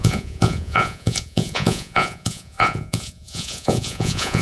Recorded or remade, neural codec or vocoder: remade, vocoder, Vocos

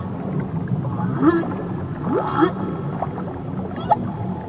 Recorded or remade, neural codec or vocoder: recorded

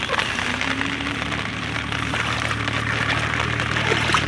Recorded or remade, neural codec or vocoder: recorded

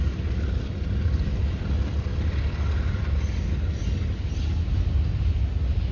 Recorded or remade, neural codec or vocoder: recorded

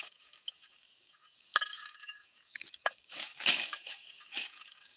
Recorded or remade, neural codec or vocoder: remade, codec, DAC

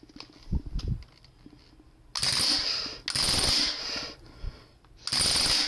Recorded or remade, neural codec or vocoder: recorded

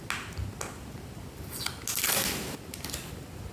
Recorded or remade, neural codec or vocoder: recorded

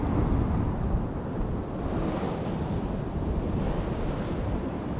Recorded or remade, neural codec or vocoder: recorded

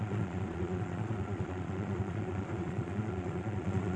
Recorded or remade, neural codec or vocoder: remade, vocoder, Vocos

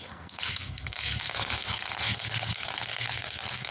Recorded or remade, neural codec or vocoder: remade, codec, SNAC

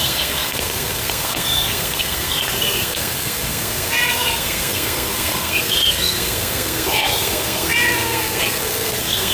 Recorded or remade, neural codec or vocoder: remade, codec, SNAC